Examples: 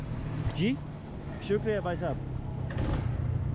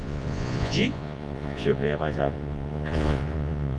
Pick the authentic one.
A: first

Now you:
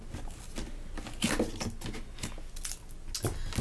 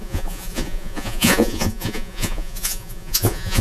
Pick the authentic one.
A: first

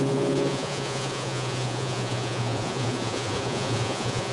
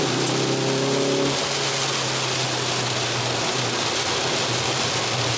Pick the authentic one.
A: second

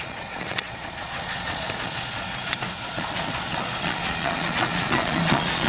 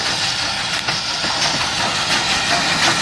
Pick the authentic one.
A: second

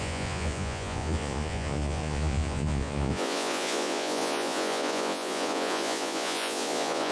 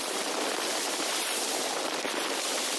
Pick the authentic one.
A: second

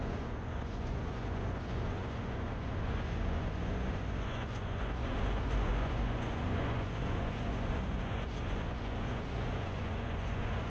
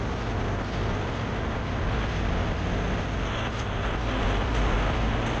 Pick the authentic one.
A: second